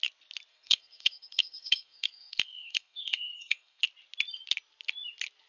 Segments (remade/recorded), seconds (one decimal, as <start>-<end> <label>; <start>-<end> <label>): 0.0-0.5 recorded; 0.5-3.8 remade; 3.8-5.5 recorded